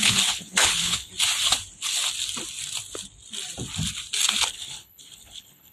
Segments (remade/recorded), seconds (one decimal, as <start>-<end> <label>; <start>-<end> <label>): 0.0-1.1 remade; 1.1-4.5 recorded; 4.5-5.7 remade